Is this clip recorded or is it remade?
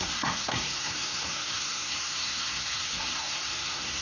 remade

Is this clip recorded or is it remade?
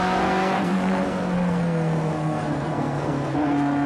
remade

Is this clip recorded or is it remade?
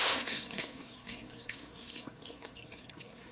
remade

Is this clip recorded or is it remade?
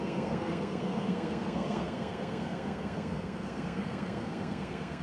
remade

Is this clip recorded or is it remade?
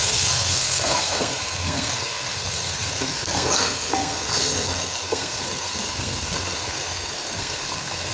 remade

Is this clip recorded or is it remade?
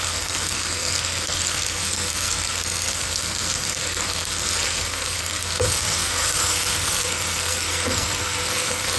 remade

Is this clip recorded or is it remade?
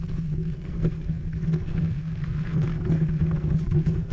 remade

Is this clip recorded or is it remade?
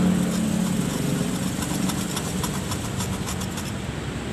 recorded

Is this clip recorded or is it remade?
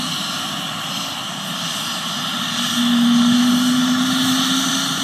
recorded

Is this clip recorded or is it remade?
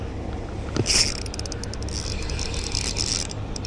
recorded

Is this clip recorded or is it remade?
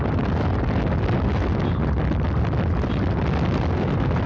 recorded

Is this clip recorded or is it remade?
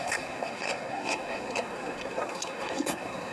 remade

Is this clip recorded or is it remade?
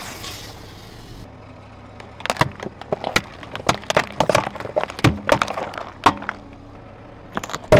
recorded